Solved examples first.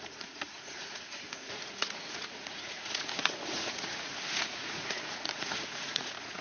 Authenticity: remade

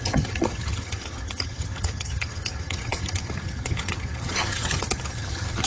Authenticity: remade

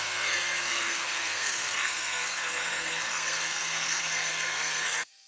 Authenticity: remade